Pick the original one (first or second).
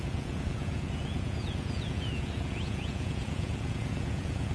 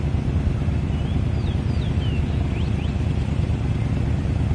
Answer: second